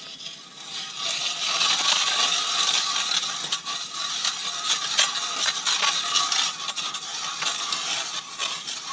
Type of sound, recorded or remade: recorded